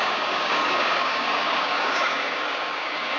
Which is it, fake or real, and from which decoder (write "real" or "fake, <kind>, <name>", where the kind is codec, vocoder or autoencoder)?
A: fake, codec, DAC